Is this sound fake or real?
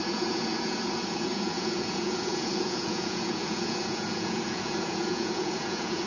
fake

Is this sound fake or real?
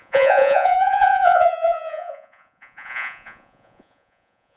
fake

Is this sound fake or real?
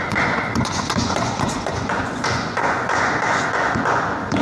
fake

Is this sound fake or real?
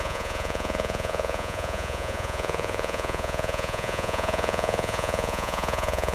fake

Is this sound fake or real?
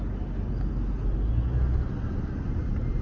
real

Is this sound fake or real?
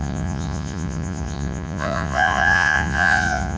fake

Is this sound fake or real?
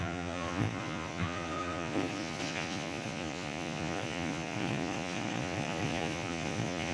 fake